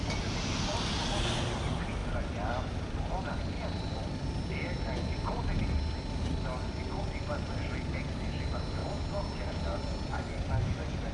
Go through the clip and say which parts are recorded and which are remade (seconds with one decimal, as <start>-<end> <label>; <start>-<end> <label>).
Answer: 0.0-11.1 recorded